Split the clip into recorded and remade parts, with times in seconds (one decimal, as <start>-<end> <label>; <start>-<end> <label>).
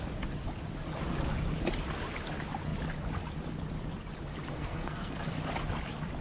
0.0-4.5 recorded; 4.5-5.3 remade; 5.3-6.2 recorded